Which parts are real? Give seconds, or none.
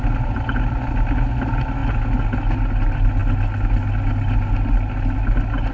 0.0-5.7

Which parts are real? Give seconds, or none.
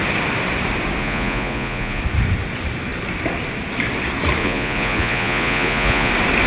0.0-1.0; 2.0-4.4; 6.1-6.5